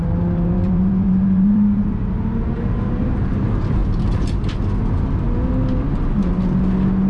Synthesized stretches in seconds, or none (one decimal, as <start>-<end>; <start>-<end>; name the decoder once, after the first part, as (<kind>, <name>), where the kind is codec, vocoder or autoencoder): 0.0-3.8 (vocoder, BigVGAN v2)

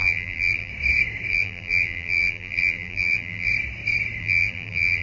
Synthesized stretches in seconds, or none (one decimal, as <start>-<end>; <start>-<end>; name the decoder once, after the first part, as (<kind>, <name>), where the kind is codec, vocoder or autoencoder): 0.0-0.7 (vocoder, BigVGAN v2); 1.3-3.5; 4.2-5.0

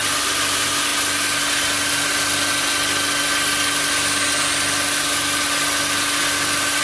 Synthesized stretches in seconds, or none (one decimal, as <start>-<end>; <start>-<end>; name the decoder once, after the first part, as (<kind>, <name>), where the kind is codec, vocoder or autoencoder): none

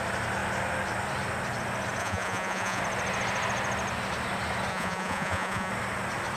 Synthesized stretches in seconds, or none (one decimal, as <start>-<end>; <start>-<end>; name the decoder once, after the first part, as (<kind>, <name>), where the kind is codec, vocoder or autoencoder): 2.0-2.8 (vocoder, Vocos); 4.7-5.7

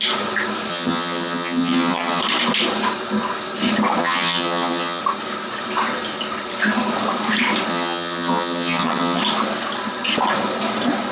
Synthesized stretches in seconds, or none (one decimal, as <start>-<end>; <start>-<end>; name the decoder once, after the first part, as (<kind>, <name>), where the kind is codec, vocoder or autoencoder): 0.7-2.2 (vocoder, HiFi-GAN); 4.0-5.0; 7.7-9.2

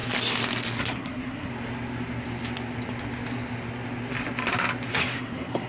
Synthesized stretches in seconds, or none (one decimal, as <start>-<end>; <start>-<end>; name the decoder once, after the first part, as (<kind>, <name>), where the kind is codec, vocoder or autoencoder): 0.8-1.5 (codec, SNAC); 4.9-5.7

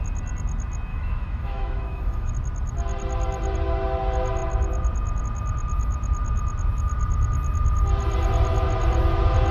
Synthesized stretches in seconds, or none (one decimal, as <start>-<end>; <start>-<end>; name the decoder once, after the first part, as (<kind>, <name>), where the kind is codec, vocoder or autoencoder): 0.9-2.3 (autoencoder, DAC-VAE)

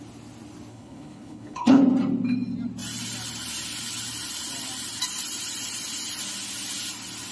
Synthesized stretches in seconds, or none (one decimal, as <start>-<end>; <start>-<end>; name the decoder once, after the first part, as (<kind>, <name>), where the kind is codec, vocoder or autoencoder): 0.7-1.8 (codec, HILCodec)